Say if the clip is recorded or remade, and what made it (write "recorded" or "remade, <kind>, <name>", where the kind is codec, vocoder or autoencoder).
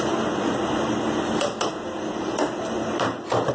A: recorded